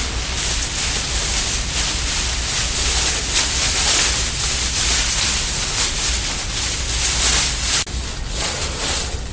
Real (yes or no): yes